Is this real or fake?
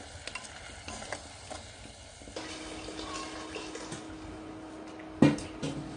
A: real